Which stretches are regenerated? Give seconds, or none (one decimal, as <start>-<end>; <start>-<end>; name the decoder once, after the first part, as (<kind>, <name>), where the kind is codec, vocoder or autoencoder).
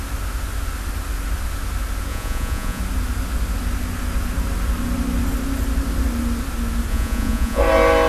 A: 2.1-2.8 (vocoder, Vocos); 6.9-7.6